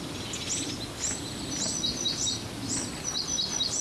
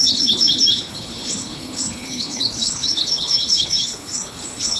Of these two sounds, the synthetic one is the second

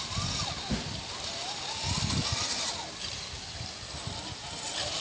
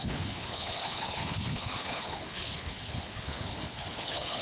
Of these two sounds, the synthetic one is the second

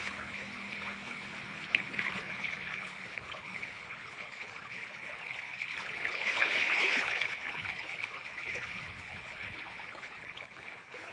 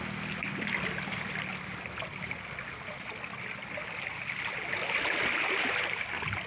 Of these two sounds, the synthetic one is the first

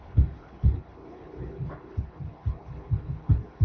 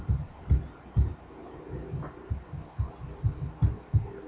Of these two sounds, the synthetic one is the first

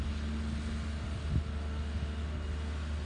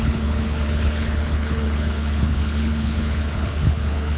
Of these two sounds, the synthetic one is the second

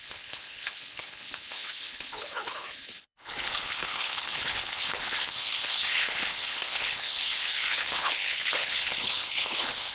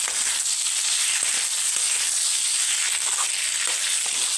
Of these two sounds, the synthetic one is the first